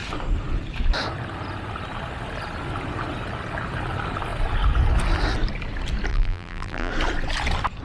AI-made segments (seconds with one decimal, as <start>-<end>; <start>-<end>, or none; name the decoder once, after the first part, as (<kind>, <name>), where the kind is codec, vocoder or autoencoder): 6.1-6.9 (vocoder, BigVGAN v2)